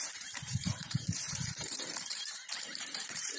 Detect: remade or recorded remade